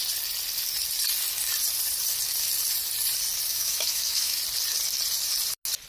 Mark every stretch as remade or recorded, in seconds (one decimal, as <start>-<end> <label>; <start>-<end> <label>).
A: 0.0-3.5 recorded; 3.5-4.4 remade; 4.4-5.9 recorded